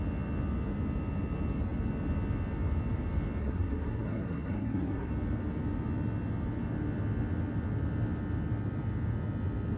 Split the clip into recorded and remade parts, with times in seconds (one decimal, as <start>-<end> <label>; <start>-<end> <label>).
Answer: 0.0-3.4 recorded; 3.4-5.1 remade; 5.1-9.8 recorded